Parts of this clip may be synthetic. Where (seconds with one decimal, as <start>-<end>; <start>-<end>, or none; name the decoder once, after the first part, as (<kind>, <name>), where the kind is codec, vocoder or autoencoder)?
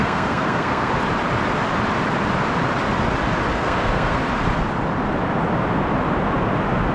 0.0-0.9 (codec, SNAC); 3.5-4.2